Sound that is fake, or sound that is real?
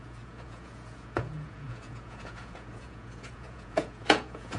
fake